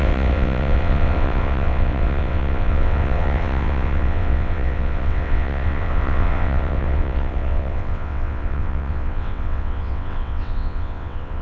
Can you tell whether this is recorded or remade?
remade